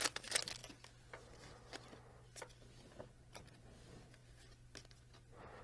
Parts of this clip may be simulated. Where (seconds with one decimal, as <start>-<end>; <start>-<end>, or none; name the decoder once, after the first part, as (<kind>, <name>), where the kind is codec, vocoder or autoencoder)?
none